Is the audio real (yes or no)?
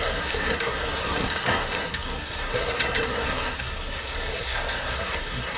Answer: no